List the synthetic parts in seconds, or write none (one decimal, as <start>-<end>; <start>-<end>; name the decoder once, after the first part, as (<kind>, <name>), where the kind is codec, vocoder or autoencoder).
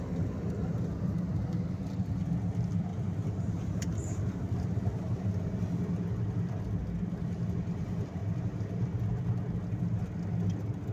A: 2.9-5.3 (vocoder, BigVGAN v2)